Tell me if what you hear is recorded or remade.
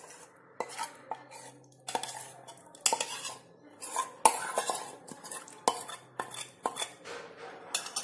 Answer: recorded